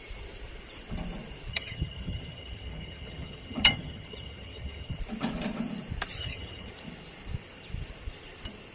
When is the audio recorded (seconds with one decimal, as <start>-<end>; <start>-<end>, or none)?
0.0-1.5; 5.0-6.2; 6.7-8.7